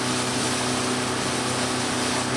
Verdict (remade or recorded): recorded